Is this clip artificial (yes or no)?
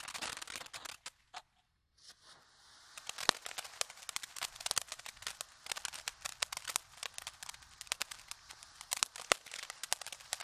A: no